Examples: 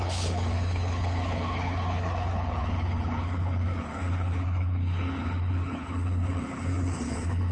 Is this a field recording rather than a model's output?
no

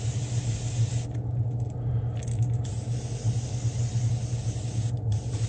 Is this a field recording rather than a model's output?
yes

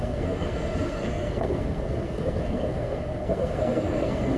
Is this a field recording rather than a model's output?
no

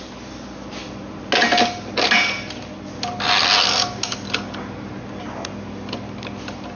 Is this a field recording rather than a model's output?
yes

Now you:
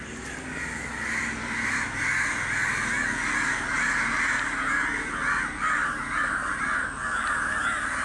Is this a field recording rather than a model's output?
yes